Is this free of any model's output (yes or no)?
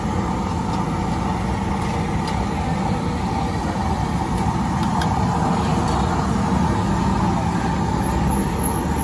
yes